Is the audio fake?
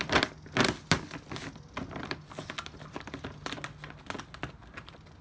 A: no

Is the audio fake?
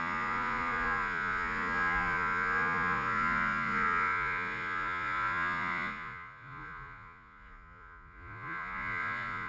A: yes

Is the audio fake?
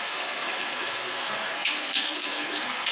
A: yes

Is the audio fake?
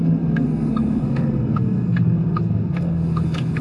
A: yes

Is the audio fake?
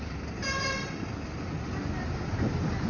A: no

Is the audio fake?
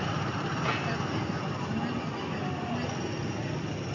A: no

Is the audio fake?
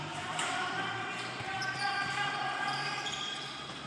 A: yes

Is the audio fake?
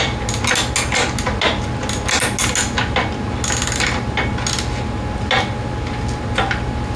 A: no